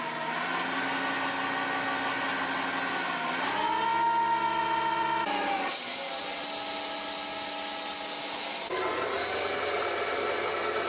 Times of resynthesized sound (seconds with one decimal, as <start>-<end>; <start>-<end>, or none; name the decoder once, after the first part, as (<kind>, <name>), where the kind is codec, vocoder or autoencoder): none